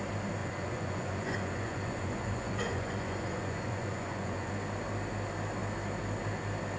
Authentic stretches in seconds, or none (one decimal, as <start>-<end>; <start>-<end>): 0.0-0.4; 4.5-6.8